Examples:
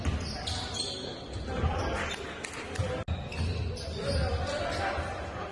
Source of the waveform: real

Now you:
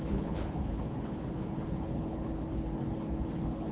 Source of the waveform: fake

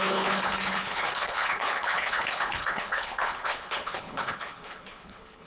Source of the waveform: fake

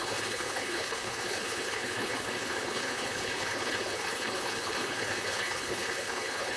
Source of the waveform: fake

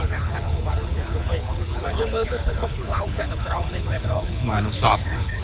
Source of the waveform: fake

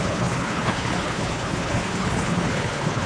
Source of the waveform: fake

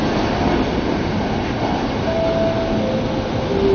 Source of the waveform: real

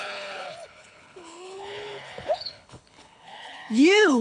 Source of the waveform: fake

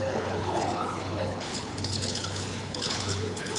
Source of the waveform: fake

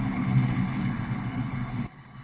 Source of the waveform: fake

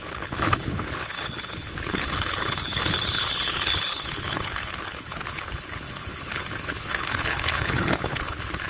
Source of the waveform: fake